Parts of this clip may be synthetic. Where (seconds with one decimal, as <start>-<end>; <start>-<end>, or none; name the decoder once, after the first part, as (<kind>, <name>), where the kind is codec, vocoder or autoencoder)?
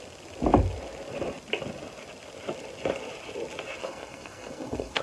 3.8-5.0 (codec, SNAC)